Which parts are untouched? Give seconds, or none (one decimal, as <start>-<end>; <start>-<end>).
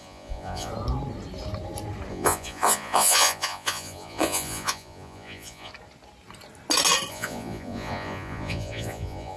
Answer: 0.7-2.1; 5.7-7.1